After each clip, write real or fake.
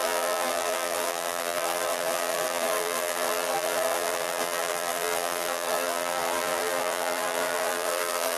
fake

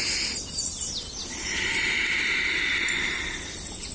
real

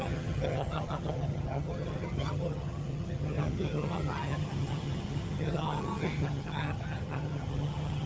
fake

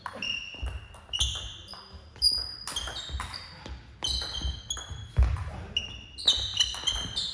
real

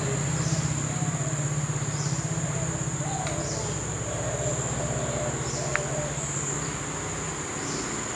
real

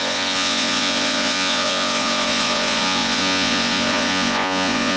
fake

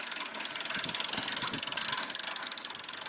real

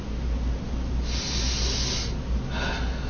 real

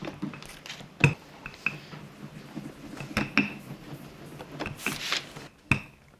real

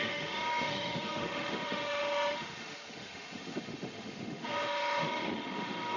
fake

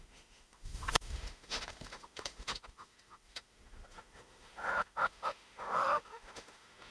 fake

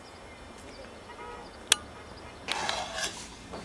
real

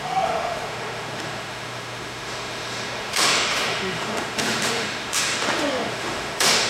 fake